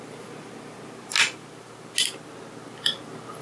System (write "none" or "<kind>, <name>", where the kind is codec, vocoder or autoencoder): none